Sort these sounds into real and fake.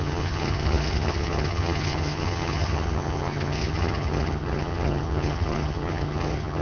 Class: fake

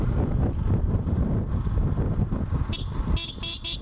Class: real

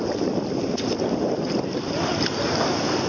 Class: real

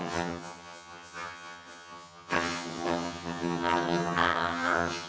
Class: fake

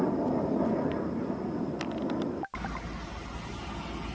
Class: real